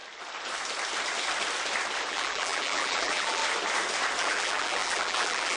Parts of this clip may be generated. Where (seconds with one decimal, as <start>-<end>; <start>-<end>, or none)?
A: 2.1-3.4; 4.2-5.6